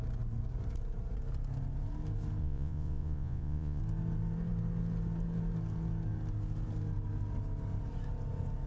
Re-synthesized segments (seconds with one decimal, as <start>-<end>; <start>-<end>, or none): 2.4-3.8